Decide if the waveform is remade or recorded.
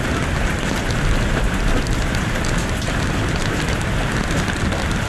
recorded